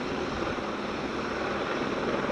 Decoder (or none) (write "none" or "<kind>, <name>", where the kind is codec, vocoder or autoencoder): none